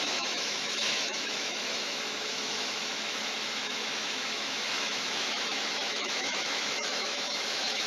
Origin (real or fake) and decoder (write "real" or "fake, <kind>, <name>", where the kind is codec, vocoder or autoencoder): fake, autoencoder, DAC-VAE